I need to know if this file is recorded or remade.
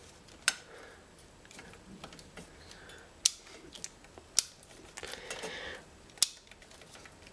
recorded